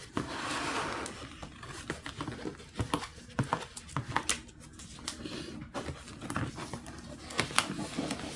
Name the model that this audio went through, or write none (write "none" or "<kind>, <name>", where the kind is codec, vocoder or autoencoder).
none